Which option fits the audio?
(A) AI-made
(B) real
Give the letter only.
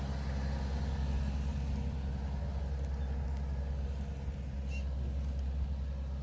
B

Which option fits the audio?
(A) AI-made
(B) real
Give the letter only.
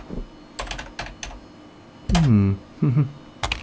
B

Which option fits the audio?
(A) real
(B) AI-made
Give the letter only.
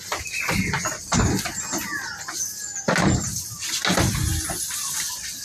A